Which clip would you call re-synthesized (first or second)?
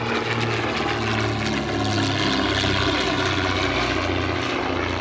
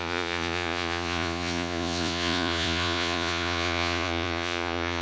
second